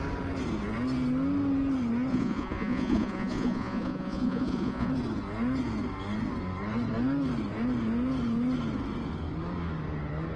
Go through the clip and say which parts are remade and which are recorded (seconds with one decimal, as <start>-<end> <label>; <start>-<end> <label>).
0.0-2.1 recorded; 2.1-4.9 remade; 4.9-10.4 recorded